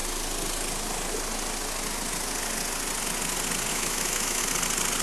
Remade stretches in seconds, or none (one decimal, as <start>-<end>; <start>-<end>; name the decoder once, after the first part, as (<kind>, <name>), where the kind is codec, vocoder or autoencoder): 3.7-4.4 (autoencoder, DAC-VAE)